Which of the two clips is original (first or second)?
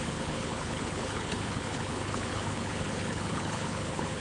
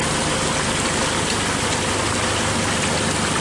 second